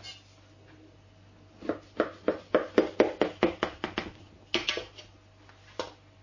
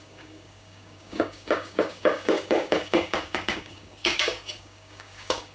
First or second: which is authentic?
first